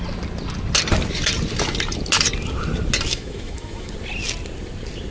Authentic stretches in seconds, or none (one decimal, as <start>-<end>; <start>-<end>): 0.0-3.1; 3.9-5.1